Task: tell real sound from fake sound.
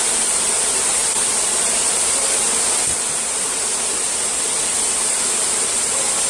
real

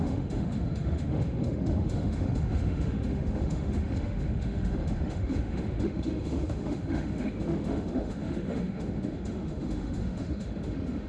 fake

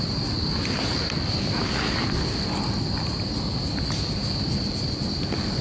real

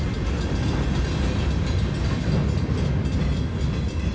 real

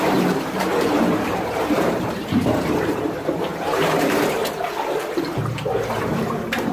fake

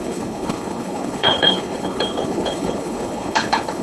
fake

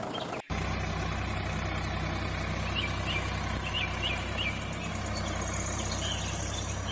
real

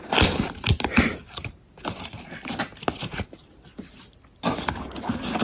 real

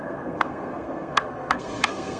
fake